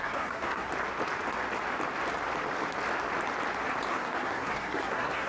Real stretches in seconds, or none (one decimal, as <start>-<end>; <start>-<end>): 0.7-3.9

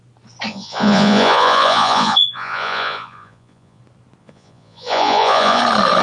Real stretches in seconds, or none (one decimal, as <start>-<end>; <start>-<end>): 0.0-0.5; 3.8-4.2; 5.6-6.0

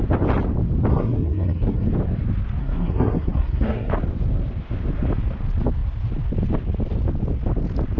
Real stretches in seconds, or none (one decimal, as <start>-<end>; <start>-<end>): 0.0-0.9; 1.9-2.6; 3.9-8.0

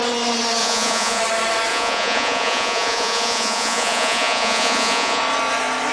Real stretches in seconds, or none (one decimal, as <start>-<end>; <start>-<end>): 0.0-0.6; 1.2-1.7; 5.2-5.9

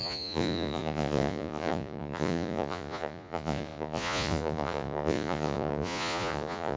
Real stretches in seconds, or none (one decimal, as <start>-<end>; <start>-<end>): none

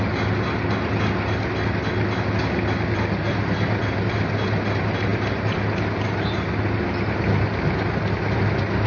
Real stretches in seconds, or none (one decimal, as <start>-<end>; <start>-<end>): 0.0-8.9